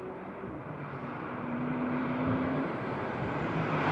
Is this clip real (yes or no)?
no